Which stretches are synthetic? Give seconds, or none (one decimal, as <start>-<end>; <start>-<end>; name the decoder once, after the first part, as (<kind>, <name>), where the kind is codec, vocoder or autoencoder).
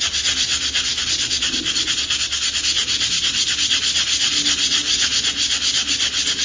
none